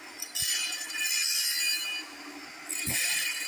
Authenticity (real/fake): real